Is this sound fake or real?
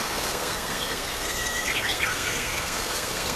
fake